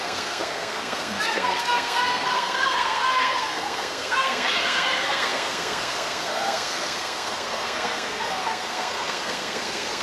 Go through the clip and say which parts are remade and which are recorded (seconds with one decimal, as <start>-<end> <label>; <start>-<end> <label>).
0.0-10.0 remade